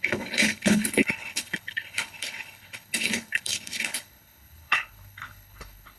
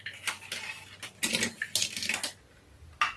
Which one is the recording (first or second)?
second